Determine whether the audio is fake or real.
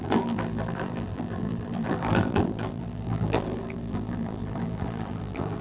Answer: fake